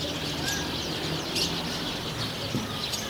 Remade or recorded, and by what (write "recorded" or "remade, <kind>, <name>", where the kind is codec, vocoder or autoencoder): recorded